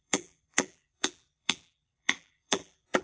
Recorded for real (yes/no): no